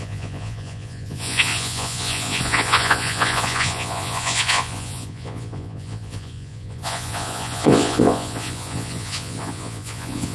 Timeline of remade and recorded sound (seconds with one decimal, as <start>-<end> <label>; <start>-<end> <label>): 0.0-10.3 remade